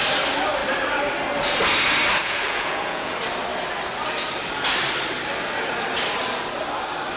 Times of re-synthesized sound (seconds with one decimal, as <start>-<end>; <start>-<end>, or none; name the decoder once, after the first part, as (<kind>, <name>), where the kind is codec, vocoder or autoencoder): 2.2-3.1 (vocoder, Vocos)